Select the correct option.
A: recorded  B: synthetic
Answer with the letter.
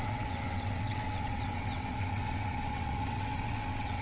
B